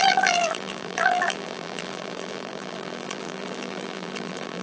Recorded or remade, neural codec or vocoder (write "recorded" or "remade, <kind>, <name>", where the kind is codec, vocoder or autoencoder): remade, vocoder, BigVGAN v2